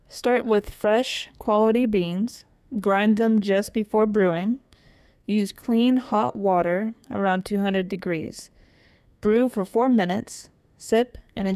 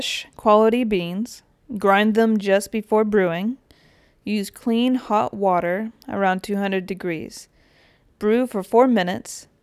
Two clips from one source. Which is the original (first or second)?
second